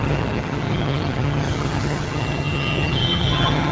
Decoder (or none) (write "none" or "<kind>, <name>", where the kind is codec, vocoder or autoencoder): vocoder, HiFi-GAN